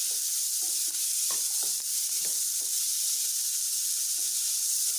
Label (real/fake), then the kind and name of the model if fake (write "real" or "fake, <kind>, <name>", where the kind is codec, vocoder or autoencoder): real